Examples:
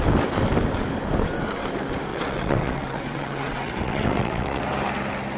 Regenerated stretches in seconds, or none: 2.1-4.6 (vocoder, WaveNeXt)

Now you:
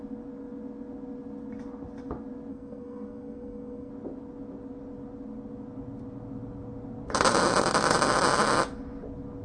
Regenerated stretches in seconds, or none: 2.5-3.9 (codec, SNAC)

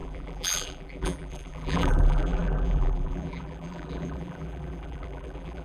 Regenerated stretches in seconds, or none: 0.0-5.6 (vocoder, BigVGAN v2)